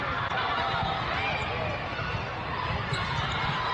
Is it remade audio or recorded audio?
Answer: recorded